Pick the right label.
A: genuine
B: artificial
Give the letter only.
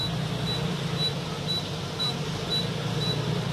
A